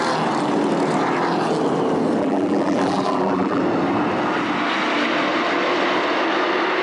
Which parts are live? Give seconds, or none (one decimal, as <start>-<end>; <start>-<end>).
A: 0.0-2.2; 3.6-6.8